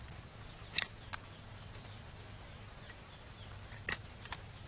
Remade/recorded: recorded